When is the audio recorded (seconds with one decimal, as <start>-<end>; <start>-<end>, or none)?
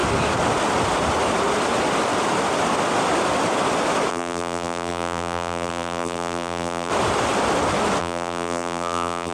0.0-4.1; 6.9-8.0